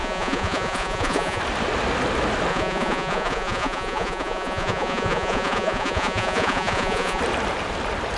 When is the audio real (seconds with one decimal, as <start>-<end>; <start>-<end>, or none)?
1.4-2.5; 7.2-8.2